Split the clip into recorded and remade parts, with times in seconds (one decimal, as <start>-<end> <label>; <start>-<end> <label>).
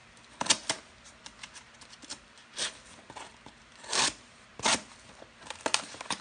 0.0-1.2 recorded; 1.2-2.4 remade; 2.4-3.2 recorded; 3.2-4.5 remade; 4.5-6.2 recorded